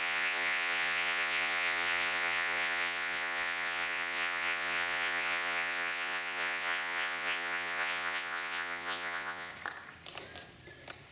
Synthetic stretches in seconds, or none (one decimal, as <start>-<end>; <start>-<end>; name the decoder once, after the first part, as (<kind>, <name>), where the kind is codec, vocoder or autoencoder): 0.0-9.5 (vocoder, Vocos)